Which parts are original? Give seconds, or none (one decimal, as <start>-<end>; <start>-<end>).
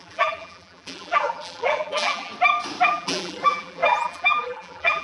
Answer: 2.3-2.9